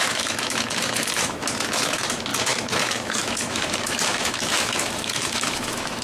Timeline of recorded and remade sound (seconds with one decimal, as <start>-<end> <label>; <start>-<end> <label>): 0.0-6.0 remade